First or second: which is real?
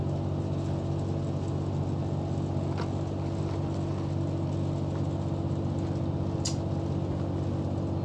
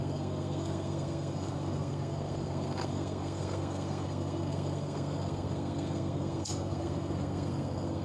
first